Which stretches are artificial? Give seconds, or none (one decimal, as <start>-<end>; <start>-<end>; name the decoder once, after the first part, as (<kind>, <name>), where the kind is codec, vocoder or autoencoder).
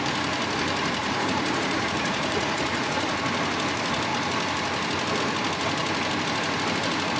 1.0-3.1 (vocoder, Vocos)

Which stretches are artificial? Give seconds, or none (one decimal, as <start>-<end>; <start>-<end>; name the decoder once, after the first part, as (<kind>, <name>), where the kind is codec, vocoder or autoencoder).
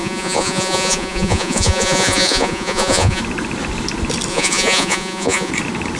0.0-3.2 (vocoder, Vocos); 4.3-5.5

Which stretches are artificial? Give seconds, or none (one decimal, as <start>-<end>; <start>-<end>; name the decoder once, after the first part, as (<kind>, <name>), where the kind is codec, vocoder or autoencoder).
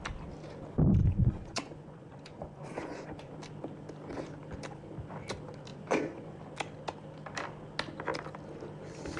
1.0-3.3 (vocoder, Vocos); 5.7-6.4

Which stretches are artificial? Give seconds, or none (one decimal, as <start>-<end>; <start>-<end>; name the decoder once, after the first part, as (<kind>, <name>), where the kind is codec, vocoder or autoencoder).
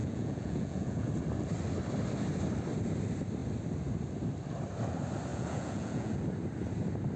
0.0-1.1 (vocoder, Vocos); 5.3-6.2